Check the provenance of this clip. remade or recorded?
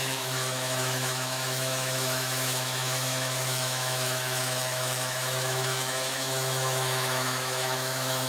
remade